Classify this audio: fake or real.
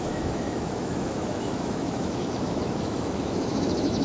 fake